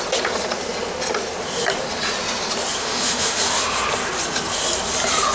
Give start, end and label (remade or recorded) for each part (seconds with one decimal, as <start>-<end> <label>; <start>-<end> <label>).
0.0-2.8 recorded; 2.8-3.4 remade; 3.4-5.3 recorded